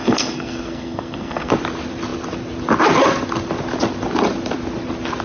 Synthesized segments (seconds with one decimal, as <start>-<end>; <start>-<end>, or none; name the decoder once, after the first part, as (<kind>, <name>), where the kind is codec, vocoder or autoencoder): 0.0-1.5 (codec, SNAC)